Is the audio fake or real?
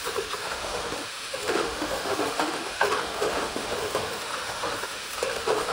fake